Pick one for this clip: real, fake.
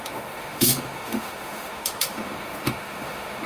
fake